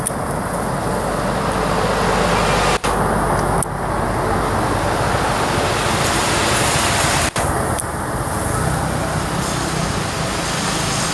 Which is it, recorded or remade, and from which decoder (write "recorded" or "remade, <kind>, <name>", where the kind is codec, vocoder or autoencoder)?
recorded